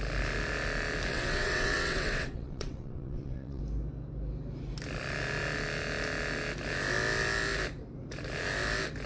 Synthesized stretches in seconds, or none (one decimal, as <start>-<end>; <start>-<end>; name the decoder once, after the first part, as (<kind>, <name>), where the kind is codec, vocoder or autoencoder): 1.1-3.6 (vocoder, WaveNeXt)